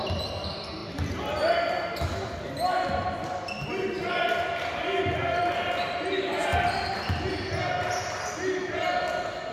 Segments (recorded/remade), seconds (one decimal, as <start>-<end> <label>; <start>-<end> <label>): 0.0-9.5 recorded